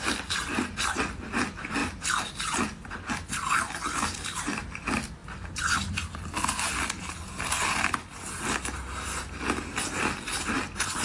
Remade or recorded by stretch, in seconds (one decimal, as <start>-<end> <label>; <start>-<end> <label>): 0.0-11.0 recorded